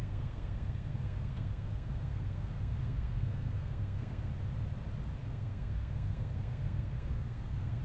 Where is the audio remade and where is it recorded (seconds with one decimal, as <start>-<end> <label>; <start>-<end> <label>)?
0.0-4.3 remade; 4.3-5.2 recorded; 5.2-7.8 remade